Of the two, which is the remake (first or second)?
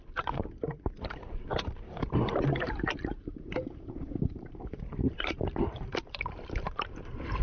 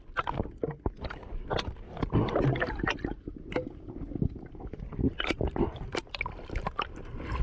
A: first